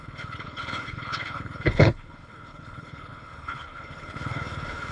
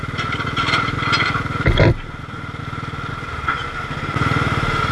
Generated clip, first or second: first